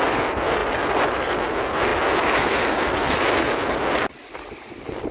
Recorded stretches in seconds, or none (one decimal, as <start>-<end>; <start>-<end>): 0.0-5.1